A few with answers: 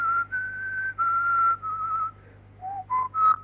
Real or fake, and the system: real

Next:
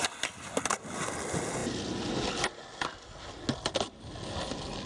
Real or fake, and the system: real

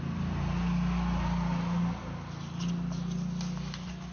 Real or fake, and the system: real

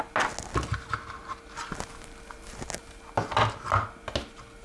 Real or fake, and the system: real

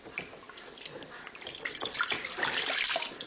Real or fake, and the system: real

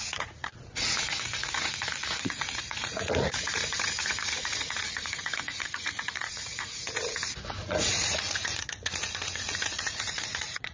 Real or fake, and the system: fake, vocoder, Vocos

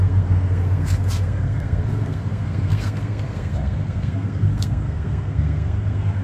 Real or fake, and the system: fake, codec, SNAC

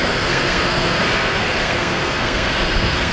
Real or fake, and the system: fake, codec, SNAC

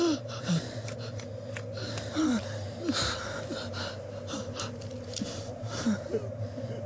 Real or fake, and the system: real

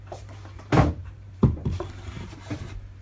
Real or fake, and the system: fake, vocoder, BigVGAN v2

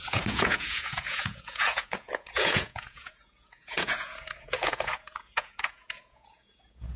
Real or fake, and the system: fake, vocoder, Vocos